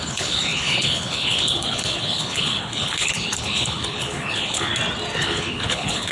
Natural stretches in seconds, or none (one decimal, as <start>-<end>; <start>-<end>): 4.7-5.2